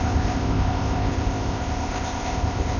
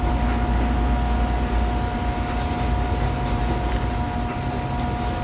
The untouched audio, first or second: second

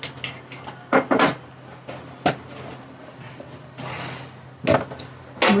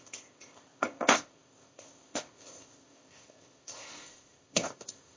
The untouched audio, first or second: first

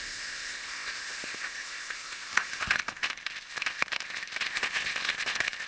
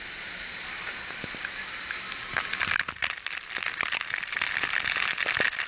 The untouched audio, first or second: second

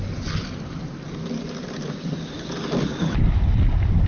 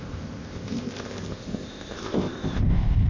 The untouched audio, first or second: first